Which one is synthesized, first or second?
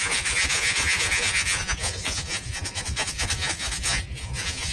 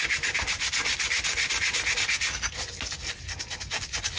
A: first